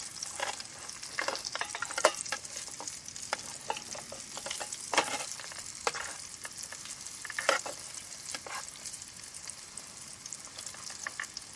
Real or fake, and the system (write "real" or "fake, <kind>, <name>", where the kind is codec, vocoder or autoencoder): real